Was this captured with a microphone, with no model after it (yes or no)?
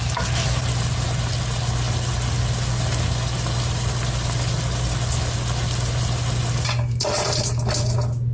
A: yes